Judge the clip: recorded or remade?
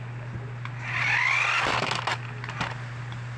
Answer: recorded